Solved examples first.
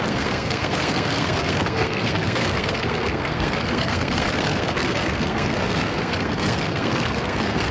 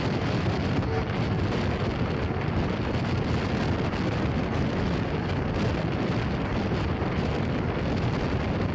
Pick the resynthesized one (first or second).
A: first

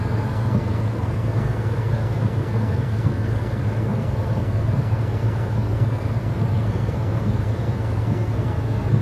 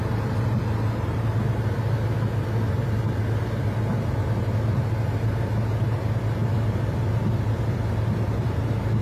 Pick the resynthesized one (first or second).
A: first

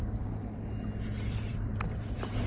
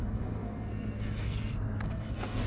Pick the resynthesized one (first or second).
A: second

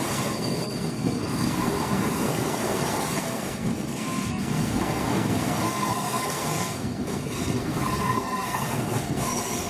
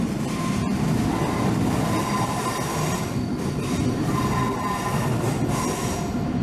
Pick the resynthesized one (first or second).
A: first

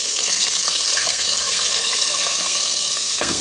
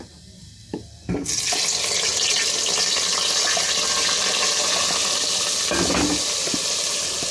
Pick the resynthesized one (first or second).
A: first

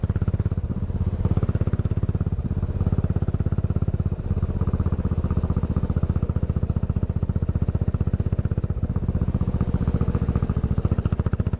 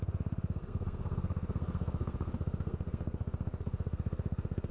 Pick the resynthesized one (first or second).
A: second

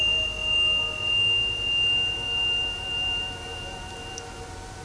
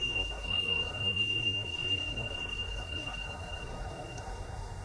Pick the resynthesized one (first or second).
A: second